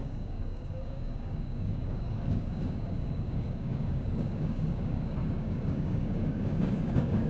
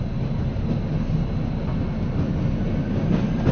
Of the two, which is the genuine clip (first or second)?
second